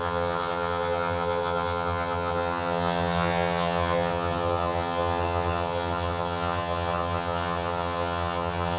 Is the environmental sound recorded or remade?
remade